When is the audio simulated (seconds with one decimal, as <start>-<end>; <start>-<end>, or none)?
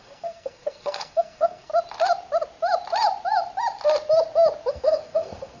0.0-1.7; 4.7-5.6